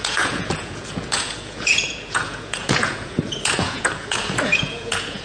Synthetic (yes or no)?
yes